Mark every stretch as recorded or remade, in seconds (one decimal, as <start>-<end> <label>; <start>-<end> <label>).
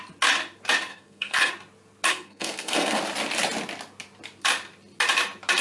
0.0-0.9 recorded; 0.9-1.5 remade; 1.5-2.1 recorded; 2.1-3.0 remade; 3.0-5.6 recorded